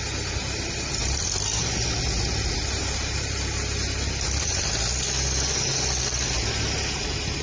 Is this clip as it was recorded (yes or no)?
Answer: yes